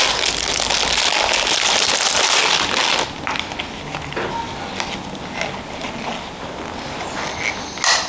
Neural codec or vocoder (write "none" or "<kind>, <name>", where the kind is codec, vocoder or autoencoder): none